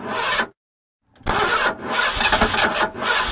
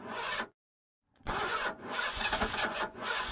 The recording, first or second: first